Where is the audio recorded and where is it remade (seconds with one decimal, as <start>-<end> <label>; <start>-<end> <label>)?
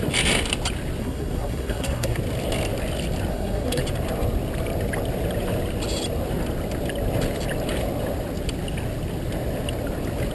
0.0-1.0 recorded; 1.0-2.2 remade; 2.2-3.3 recorded; 3.3-3.8 remade; 3.8-10.3 recorded